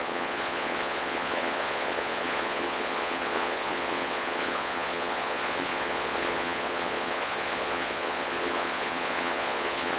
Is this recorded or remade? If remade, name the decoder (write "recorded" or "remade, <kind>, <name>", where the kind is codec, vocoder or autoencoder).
remade, vocoder, Vocos